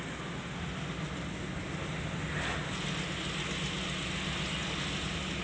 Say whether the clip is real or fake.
real